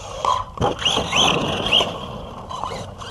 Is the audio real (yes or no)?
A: yes